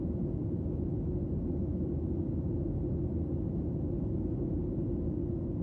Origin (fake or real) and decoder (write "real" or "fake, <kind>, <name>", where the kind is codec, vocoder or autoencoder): real